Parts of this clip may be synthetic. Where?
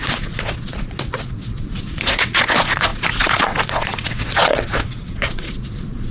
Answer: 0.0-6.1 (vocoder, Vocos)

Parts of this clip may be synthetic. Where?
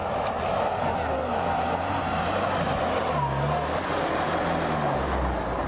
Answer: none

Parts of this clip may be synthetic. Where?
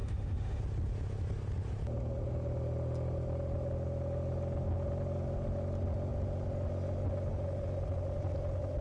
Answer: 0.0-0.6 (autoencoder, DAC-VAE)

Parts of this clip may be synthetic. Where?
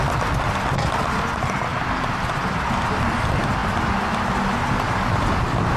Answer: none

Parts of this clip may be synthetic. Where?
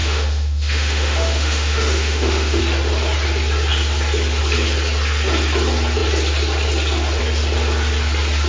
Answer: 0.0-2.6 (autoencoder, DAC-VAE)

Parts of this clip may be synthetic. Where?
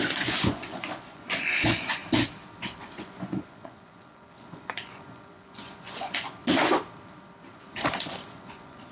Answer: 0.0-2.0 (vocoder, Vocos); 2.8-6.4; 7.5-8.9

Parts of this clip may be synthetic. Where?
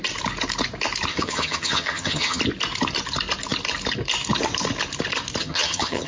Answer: 1.1-2.4 (vocoder, HiFi-GAN); 5.4-6.1